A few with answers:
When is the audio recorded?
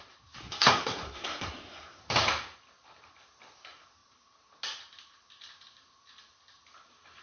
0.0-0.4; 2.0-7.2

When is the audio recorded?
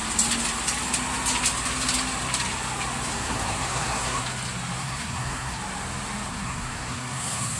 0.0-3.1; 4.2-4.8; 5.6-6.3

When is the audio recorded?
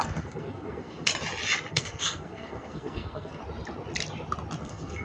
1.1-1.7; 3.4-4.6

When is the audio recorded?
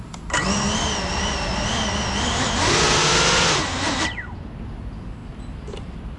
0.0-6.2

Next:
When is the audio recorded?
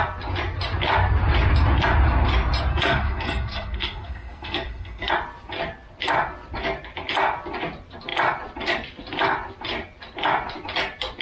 0.0-2.7; 5.1-11.2